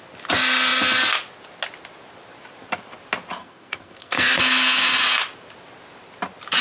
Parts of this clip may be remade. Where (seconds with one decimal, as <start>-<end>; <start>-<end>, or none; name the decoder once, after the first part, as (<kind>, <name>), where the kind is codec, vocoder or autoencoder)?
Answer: 3.4-4.4 (codec, SNAC)